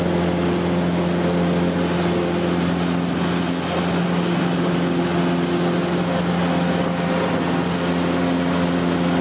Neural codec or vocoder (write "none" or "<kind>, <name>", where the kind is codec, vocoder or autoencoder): none